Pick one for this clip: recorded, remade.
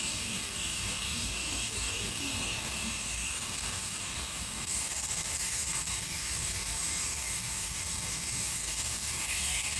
remade